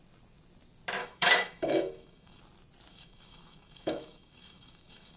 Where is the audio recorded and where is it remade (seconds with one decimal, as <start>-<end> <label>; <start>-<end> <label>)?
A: 0.0-1.0 recorded; 1.0-2.4 remade; 2.4-2.9 recorded; 2.9-5.2 remade